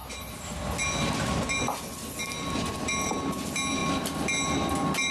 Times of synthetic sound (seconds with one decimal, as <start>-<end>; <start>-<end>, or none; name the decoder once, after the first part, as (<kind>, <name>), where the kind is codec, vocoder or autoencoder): none